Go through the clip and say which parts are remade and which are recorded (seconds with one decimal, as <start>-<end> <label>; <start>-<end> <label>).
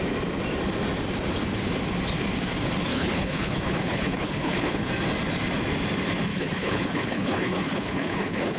0.0-2.9 recorded; 2.9-4.9 remade; 4.9-6.3 recorded; 6.3-8.6 remade